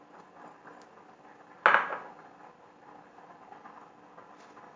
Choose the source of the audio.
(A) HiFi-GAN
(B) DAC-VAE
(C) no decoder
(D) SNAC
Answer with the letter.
C